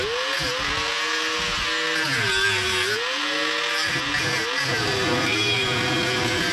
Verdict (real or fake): real